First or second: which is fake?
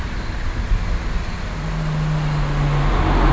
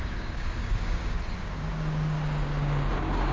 second